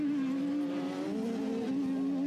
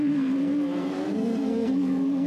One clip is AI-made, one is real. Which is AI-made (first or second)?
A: second